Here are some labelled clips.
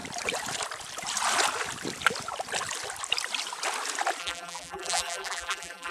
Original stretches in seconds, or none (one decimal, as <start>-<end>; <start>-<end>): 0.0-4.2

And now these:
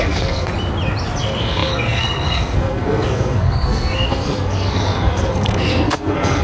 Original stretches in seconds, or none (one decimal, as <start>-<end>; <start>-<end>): 0.5-1.2

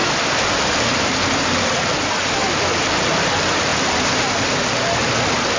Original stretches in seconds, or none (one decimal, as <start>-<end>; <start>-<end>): 0.0-5.6

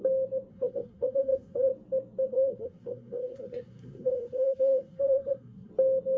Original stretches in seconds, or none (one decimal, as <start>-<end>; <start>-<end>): 0.0-0.5; 1.7-2.3; 5.7-6.2

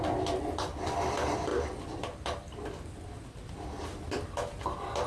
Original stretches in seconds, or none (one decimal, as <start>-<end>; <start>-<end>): 0.0-1.5; 3.5-5.1